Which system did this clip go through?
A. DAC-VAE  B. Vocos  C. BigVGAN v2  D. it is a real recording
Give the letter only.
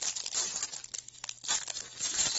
D